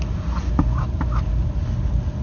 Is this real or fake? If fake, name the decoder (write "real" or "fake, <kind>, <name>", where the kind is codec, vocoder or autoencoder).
real